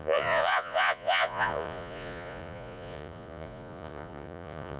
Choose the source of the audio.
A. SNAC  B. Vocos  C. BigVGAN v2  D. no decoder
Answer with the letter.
B